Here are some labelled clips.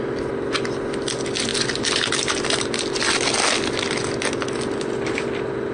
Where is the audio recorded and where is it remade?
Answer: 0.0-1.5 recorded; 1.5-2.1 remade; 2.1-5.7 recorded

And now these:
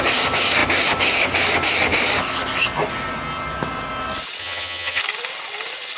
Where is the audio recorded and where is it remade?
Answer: 0.0-4.4 recorded; 4.4-5.0 remade; 5.0-6.0 recorded